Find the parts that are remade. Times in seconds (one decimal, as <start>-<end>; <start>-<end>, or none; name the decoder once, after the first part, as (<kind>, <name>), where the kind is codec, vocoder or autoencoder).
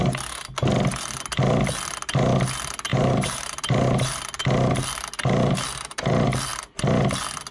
2.9-4.2 (vocoder, BigVGAN v2)